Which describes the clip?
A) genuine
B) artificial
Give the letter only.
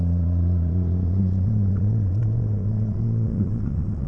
B